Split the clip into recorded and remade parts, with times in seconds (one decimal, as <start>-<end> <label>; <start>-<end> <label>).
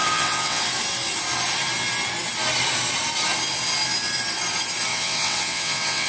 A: 0.0-0.6 remade; 0.6-4.9 recorded; 4.9-6.1 remade